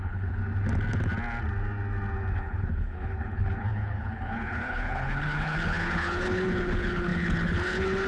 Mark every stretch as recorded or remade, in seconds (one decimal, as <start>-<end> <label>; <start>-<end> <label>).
0.0-0.4 remade; 0.4-2.3 recorded; 2.3-8.1 remade